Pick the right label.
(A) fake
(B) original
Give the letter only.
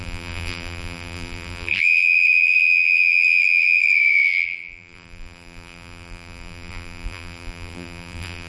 A